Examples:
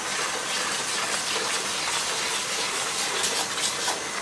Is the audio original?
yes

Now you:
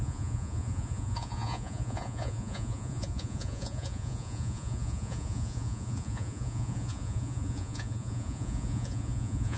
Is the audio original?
no